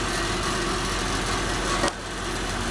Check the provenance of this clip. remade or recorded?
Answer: recorded